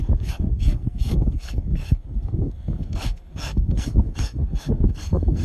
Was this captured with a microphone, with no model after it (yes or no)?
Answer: no